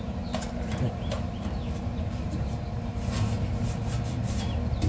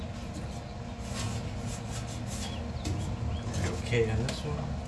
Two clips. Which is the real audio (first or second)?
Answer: second